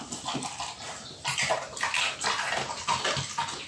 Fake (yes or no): no